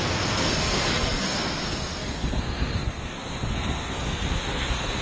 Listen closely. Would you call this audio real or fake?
fake